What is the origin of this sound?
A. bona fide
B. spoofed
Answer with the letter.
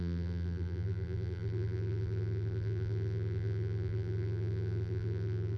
B